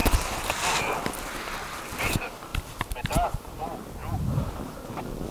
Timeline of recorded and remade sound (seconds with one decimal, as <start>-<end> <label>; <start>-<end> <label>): 0.0-5.3 recorded